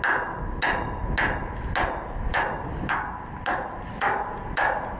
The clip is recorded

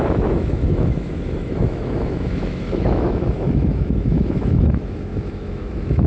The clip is remade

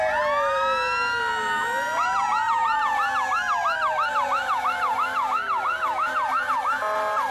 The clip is recorded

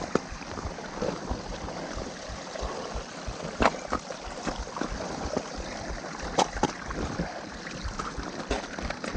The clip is recorded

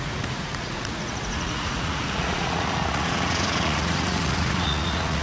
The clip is remade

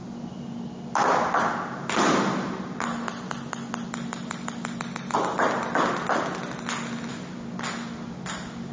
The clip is recorded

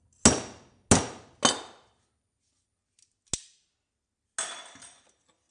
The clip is recorded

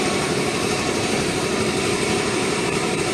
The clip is remade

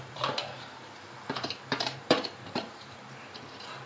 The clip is remade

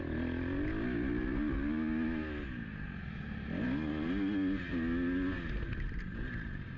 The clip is recorded